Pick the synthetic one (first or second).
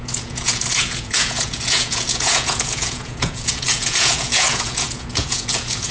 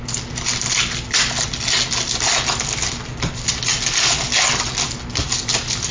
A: first